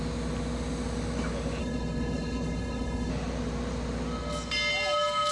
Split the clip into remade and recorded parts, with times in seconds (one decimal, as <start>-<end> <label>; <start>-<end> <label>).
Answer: 0.0-1.6 recorded; 1.6-3.1 remade; 3.1-5.3 recorded